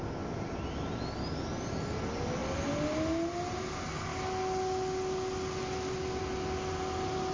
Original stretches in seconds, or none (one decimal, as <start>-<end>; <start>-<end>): 0.0-7.3